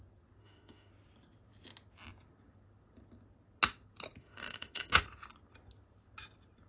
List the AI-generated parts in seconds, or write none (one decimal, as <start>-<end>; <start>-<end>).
0.4-0.9; 4.2-5.0